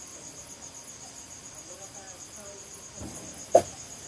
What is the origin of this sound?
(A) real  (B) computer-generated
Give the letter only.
A